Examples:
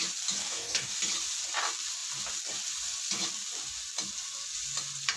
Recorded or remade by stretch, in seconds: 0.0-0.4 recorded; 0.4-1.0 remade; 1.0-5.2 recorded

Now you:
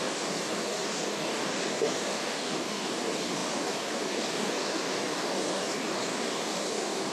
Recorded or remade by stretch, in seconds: 0.0-7.1 remade

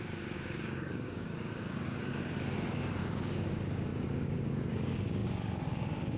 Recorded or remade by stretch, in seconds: 0.0-2.1 remade; 2.1-3.0 recorded; 3.0-6.2 remade

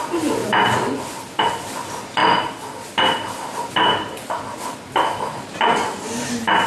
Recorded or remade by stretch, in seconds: 0.0-6.7 recorded

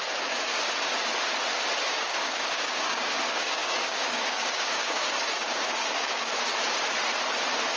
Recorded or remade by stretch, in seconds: 0.0-0.5 remade; 0.5-1.9 recorded; 1.9-6.5 remade; 6.5-7.8 recorded

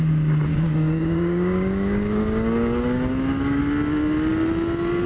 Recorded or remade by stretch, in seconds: 0.0-0.5 recorded; 0.5-3.6 remade; 3.6-5.1 recorded

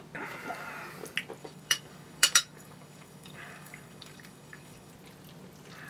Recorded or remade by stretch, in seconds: 0.0-1.4 recorded; 1.4-4.9 remade; 4.9-5.9 recorded

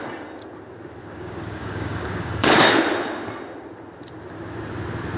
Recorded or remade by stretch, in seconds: 0.0-1.0 recorded; 1.0-2.7 remade; 2.7-5.2 recorded